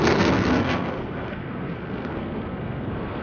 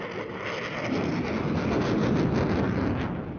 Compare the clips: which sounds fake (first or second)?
first